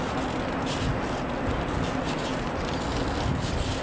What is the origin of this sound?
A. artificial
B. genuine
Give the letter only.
B